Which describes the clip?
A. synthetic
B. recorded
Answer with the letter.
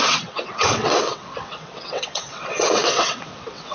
A